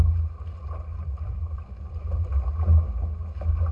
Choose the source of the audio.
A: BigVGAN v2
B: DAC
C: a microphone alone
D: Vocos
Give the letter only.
C